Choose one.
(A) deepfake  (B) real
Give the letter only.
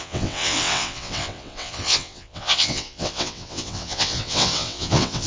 A